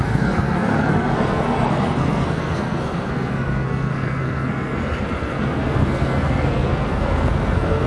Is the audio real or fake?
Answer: fake